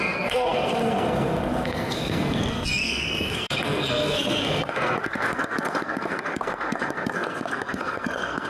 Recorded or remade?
remade